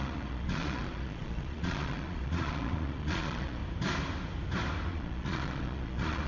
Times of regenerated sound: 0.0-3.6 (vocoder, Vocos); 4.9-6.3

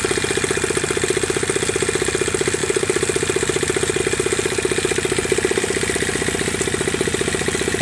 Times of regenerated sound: 2.6-4.0 (vocoder, BigVGAN v2)

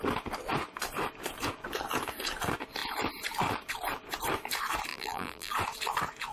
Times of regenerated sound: 4.9-5.5 (vocoder, BigVGAN v2)